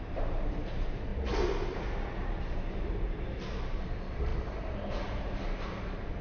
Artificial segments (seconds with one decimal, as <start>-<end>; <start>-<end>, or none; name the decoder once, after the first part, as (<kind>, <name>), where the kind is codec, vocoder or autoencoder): 0.0-1.1 (vocoder, BigVGAN v2); 2.4-6.2